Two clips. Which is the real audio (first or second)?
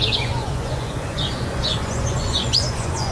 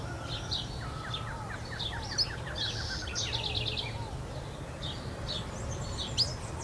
second